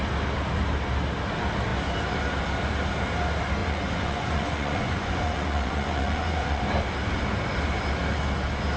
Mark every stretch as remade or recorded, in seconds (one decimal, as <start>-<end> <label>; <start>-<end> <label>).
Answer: 0.0-3.6 recorded; 3.6-6.6 remade; 6.6-8.8 recorded